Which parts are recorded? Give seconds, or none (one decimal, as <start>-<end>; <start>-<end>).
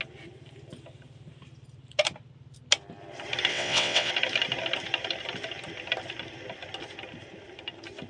0.0-3.5; 4.1-8.1